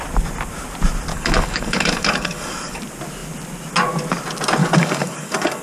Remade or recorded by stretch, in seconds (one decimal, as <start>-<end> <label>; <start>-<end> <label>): 0.0-1.1 recorded; 1.1-2.8 remade; 2.8-4.6 recorded; 4.6-5.6 remade